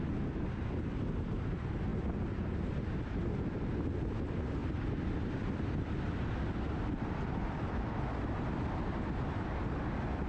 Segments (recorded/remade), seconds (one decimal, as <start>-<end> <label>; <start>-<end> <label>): 0.0-4.6 recorded; 4.6-8.0 remade; 8.0-10.3 recorded